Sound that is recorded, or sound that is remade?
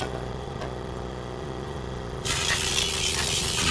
remade